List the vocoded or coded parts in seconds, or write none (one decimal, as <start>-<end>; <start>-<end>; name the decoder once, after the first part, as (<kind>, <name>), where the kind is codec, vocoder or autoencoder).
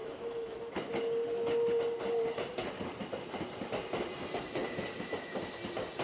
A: 0.0-0.9 (autoencoder, DAC-VAE)